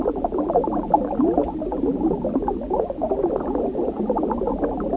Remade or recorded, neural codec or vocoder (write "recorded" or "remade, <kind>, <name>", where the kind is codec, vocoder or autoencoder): recorded